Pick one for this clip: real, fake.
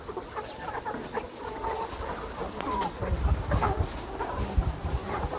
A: real